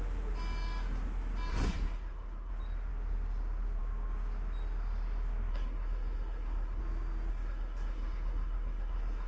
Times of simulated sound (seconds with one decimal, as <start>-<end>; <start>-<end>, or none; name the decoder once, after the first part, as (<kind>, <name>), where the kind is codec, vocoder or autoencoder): 1.5-2.5 (codec, SNAC); 5.5-6.8; 7.3-9.3